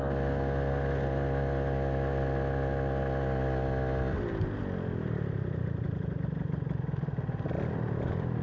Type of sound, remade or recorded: recorded